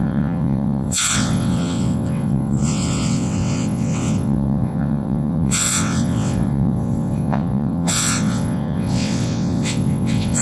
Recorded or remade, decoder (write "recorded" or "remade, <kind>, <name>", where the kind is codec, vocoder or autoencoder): remade, vocoder, WaveNeXt